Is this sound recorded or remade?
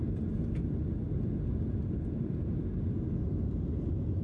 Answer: recorded